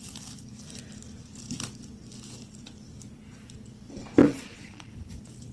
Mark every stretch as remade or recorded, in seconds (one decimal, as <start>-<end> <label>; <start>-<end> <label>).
0.0-4.2 recorded; 4.2-4.9 remade; 4.9-5.5 recorded